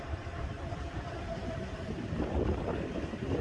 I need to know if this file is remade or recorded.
remade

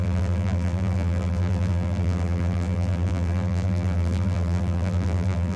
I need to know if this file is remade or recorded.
remade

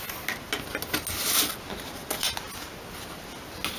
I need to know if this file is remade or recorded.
recorded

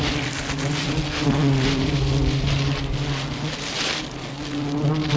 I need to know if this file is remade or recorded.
recorded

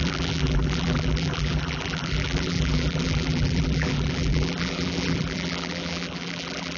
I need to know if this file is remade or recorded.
remade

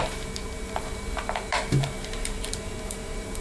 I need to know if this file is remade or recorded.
remade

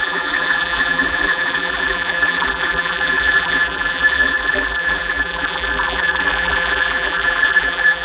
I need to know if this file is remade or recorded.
remade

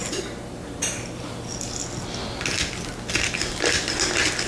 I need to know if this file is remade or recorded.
recorded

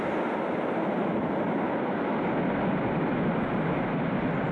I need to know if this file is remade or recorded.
recorded